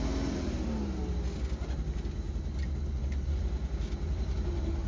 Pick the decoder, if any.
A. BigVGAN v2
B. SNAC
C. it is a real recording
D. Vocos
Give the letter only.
C